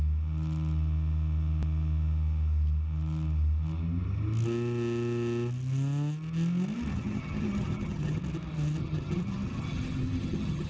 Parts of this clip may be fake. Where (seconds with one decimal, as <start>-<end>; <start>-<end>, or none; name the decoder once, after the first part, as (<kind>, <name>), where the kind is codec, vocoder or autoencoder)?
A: 6.9-8.2 (vocoder, HiFi-GAN); 8.8-10.7